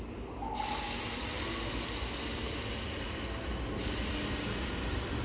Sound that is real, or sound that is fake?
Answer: real